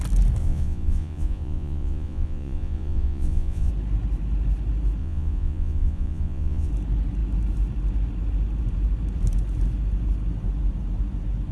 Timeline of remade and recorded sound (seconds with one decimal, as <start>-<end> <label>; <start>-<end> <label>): 0.0-0.4 recorded; 0.4-3.7 remade; 3.7-5.0 recorded; 5.0-6.7 remade; 6.7-11.5 recorded